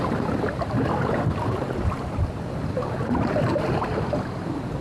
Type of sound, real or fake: real